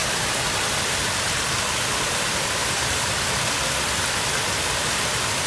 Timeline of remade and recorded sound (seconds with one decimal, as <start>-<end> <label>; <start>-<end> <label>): 0.0-3.3 remade; 3.3-5.5 recorded